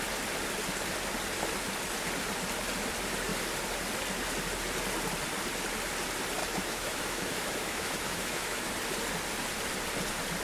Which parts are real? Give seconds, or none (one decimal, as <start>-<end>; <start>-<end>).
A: 0.0-6.4; 8.7-10.4